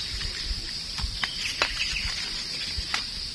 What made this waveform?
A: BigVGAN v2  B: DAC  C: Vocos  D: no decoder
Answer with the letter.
A